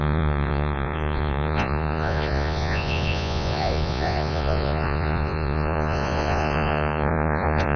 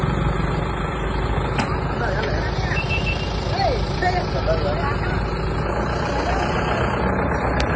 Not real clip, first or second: first